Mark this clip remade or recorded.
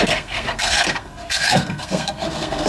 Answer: remade